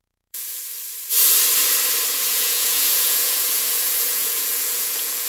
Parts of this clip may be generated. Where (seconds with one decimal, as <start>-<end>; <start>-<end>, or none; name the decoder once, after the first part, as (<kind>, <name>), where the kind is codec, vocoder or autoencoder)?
0.0-0.6 (vocoder, Vocos); 2.3-5.3